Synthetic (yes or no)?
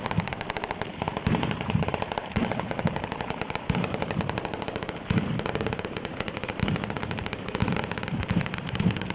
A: yes